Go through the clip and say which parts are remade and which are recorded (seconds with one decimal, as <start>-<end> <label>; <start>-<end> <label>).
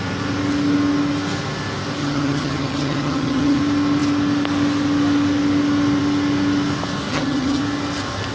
0.0-2.0 recorded; 2.0-3.6 remade; 3.6-7.1 recorded; 7.1-7.6 remade; 7.6-8.3 recorded